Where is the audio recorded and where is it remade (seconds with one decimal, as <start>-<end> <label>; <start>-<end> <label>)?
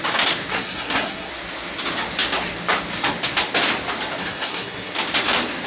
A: 0.0-0.5 recorded; 0.5-1.3 remade; 1.3-4.2 recorded; 4.2-4.9 remade; 4.9-5.7 recorded